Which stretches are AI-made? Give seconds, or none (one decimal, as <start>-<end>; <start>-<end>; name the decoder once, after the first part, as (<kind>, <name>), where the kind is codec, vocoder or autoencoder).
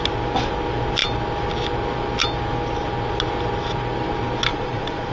4.5-5.1 (vocoder, Vocos)